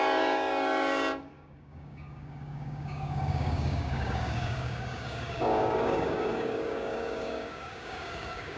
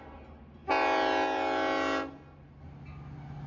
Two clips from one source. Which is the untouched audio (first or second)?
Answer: second